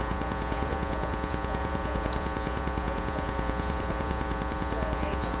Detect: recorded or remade remade